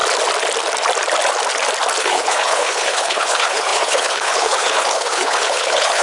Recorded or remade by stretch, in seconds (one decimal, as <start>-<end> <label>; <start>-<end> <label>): 0.0-2.0 recorded; 2.0-6.0 remade